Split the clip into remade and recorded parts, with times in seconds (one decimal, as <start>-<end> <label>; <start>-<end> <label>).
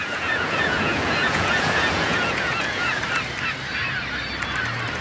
0.0-3.0 remade; 3.0-5.0 recorded